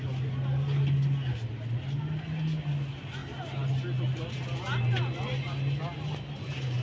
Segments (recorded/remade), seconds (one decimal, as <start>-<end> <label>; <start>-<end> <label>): 0.0-6.8 recorded